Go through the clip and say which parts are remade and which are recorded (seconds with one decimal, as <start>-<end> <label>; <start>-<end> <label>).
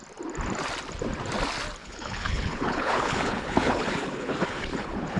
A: 0.0-1.8 recorded; 1.8-5.2 remade